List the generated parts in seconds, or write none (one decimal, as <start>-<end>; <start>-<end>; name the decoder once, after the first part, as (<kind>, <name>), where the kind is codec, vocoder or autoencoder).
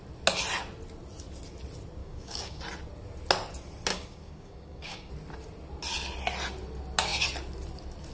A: 2.0-2.6 (codec, DAC); 3.9-5.1